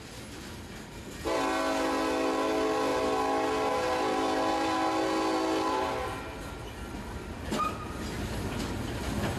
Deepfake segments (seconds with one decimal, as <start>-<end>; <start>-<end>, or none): none